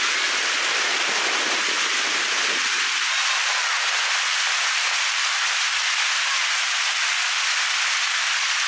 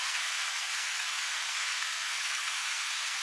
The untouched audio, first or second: first